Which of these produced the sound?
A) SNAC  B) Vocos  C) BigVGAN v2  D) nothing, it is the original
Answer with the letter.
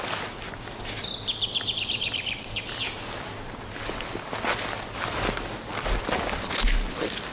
D